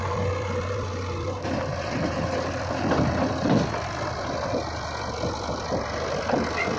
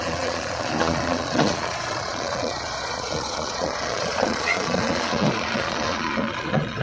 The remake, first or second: second